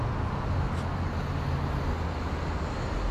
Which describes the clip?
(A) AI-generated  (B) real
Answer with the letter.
B